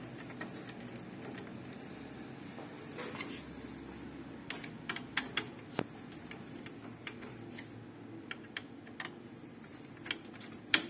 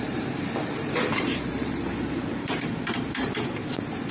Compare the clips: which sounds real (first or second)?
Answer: first